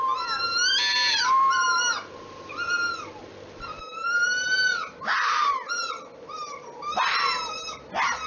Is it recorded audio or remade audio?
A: recorded